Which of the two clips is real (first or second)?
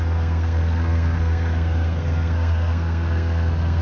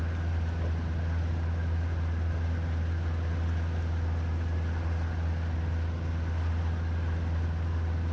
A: second